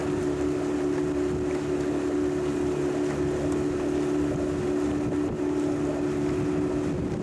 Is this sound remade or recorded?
recorded